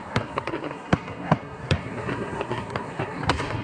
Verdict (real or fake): fake